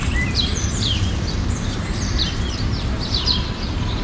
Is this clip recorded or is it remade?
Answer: remade